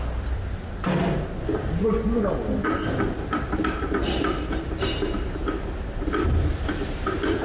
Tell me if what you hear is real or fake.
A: real